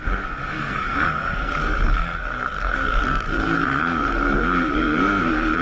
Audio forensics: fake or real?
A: fake